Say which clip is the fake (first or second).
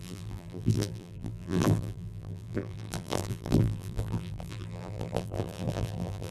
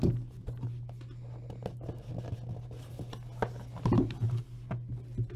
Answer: first